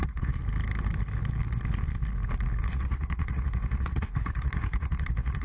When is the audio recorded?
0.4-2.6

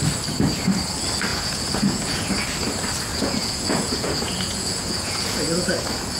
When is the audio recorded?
0.0-1.3; 2.3-3.1; 5.8-6.2